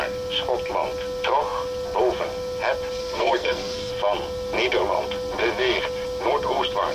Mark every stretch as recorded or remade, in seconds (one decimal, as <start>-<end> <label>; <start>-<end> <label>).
0.0-3.0 recorded; 3.0-3.9 remade; 3.9-6.9 recorded